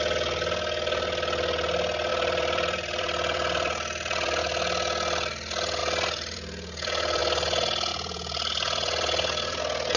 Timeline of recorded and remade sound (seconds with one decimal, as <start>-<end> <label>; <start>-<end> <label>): 0.0-2.1 recorded; 2.1-4.4 remade; 4.4-5.8 recorded; 5.8-7.2 remade; 7.2-7.9 recorded; 7.9-9.6 remade; 9.6-10.0 recorded